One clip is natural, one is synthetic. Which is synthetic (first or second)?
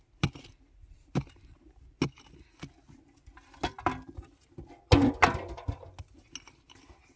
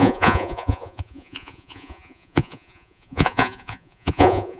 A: second